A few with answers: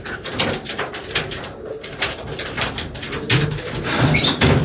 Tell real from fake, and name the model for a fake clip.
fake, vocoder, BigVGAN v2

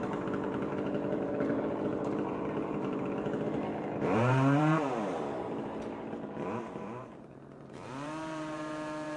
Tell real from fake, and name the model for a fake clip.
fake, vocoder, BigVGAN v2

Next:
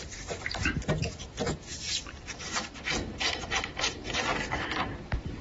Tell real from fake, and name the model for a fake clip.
fake, vocoder, BigVGAN v2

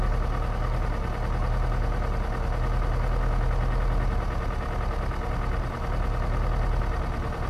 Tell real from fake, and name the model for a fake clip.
real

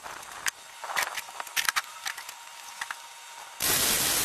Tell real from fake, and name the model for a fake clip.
real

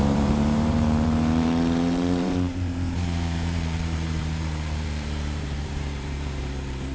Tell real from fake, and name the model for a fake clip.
fake, vocoder, BigVGAN v2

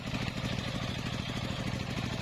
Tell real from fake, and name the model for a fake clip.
real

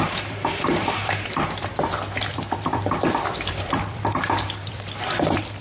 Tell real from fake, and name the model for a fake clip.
fake, vocoder, BigVGAN v2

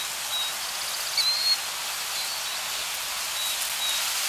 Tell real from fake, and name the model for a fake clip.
real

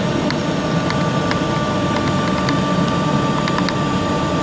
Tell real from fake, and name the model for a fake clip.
real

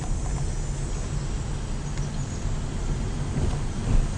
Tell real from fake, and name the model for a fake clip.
real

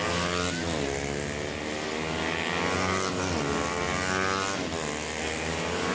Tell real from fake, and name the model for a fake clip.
real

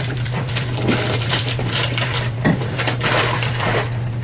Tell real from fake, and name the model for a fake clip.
fake, vocoder, BigVGAN v2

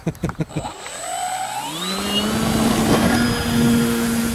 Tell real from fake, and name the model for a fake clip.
real